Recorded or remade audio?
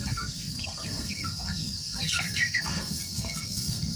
remade